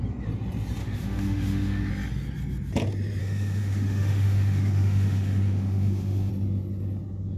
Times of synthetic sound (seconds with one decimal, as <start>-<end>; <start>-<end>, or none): 0.8-1.9; 3.2-6.3